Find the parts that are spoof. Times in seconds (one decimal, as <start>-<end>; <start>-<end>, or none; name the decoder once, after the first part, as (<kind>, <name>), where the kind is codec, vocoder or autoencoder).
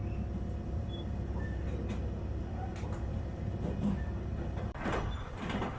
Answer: none